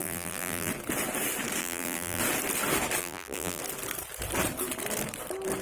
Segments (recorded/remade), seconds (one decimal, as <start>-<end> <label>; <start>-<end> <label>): 0.0-0.7 remade; 0.7-1.6 recorded; 1.6-2.2 remade; 2.2-3.0 recorded; 3.0-3.6 remade; 3.6-5.6 recorded